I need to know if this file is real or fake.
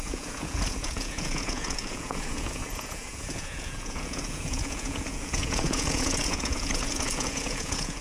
fake